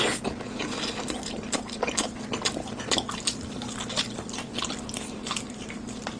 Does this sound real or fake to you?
real